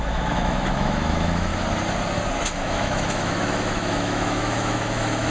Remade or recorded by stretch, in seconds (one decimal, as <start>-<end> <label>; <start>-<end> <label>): 0.0-1.5 remade; 1.5-2.6 recorded; 2.6-5.3 remade